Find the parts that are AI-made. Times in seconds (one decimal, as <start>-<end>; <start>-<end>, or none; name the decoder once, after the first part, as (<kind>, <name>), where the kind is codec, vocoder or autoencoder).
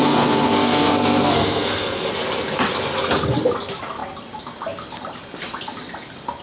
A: 0.0-2.1 (codec, SNAC)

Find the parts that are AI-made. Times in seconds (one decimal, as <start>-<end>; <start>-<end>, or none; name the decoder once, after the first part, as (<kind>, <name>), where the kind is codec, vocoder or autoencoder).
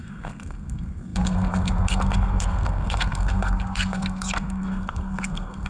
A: 0.0-5.7 (codec, SNAC)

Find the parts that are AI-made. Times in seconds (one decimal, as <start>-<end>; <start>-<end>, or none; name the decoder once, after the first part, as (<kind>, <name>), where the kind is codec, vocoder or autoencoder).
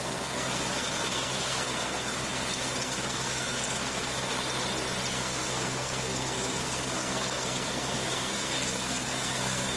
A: 0.0-4.3 (codec, SNAC); 5.1-9.8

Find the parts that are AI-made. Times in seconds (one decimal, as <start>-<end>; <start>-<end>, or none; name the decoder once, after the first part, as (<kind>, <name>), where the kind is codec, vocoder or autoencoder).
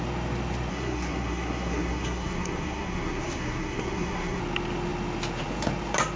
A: 0.7-4.4 (codec, SNAC)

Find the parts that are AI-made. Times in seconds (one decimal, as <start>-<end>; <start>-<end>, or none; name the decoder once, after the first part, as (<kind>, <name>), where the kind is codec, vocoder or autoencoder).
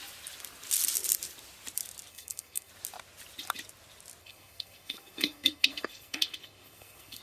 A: 2.1-2.7 (codec, SNAC); 4.2-7.2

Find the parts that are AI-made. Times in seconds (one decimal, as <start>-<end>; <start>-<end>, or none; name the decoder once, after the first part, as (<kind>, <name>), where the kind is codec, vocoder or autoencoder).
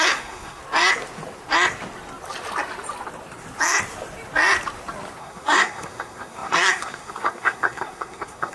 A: 0.0-0.6 (codec, SNAC); 5.2-8.5